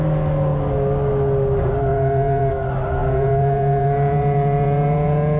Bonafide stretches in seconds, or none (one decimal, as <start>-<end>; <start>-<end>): 0.0-1.9; 2.5-3.0